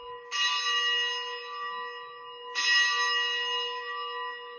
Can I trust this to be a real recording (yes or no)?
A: yes